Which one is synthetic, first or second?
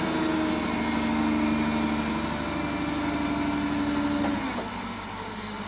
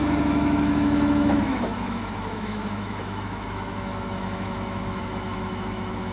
second